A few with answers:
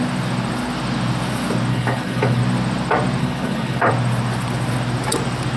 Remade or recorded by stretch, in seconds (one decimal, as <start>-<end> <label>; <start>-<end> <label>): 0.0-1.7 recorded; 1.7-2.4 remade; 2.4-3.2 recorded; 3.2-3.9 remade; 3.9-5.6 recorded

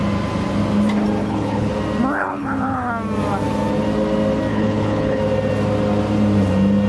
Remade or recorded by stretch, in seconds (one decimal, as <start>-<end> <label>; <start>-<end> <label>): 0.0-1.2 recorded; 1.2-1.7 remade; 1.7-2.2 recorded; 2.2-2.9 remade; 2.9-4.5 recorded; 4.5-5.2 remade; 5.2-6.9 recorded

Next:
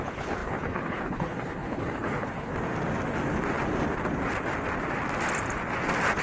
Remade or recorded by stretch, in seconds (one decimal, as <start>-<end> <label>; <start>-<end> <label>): 0.0-2.5 remade; 2.5-6.2 recorded

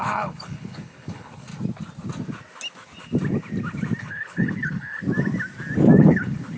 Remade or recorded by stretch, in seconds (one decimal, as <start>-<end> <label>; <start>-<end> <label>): 0.0-1.5 remade; 1.5-4.0 recorded; 4.0-5.0 remade; 5.0-6.0 recorded; 6.0-6.6 remade

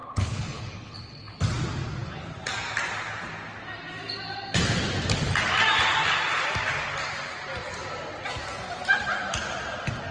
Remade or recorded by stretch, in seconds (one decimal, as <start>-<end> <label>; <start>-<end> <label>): 0.0-1.4 remade; 1.4-10.1 recorded

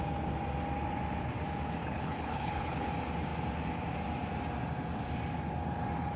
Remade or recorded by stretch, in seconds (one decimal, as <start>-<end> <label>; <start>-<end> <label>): 0.0-1.8 recorded; 1.8-2.9 remade; 2.9-6.2 recorded